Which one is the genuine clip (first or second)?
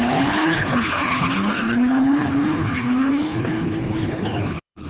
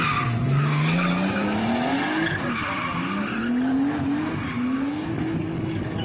second